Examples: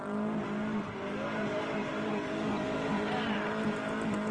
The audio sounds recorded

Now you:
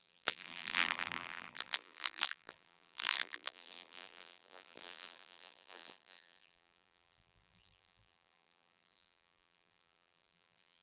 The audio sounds remade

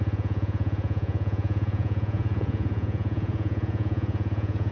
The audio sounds remade